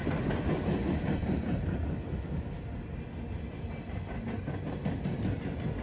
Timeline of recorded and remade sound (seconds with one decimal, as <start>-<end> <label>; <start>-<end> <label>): 0.0-5.8 recorded